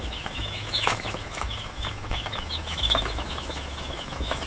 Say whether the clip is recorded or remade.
remade